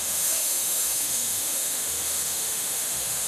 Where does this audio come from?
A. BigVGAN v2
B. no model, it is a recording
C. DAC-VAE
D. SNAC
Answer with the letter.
C